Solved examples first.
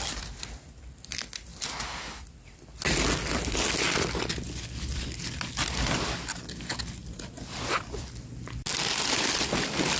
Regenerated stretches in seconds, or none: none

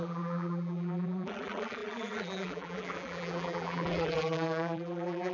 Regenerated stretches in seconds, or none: 0.0-5.3 (vocoder, BigVGAN v2)

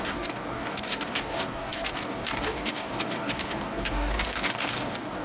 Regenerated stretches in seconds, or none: 0.0-5.2 (codec, DAC)

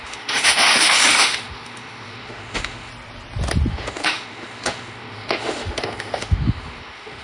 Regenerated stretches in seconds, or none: 0.0-2.9 (autoencoder, DAC-VAE); 3.7-7.2

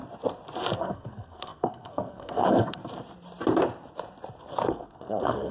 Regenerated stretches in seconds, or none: 0.8-2.8 (codec, SNAC); 4.5-5.5